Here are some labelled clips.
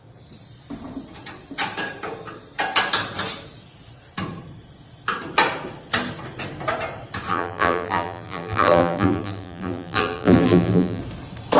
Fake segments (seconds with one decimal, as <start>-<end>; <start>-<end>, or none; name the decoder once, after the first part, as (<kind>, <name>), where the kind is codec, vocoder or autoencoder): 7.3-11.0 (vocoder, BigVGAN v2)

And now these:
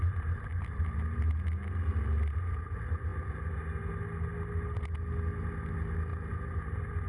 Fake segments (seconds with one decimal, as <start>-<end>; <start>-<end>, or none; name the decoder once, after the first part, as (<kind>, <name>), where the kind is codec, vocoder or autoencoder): none

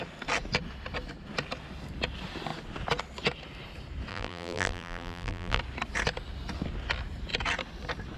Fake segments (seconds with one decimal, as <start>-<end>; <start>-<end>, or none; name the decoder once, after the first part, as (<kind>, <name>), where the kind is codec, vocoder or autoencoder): 4.1-5.6 (vocoder, BigVGAN v2)

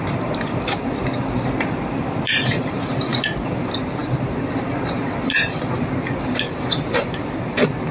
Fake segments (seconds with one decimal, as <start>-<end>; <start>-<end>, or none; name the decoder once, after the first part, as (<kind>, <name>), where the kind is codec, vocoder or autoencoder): 0.0-3.1 (vocoder, BigVGAN v2); 3.6-7.9

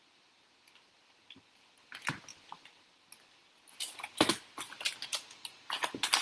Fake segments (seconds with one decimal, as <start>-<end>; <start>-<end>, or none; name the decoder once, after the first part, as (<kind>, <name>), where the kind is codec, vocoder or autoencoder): none